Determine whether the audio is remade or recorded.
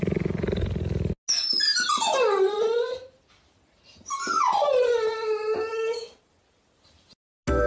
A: recorded